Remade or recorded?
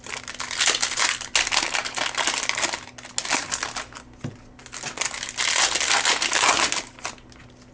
recorded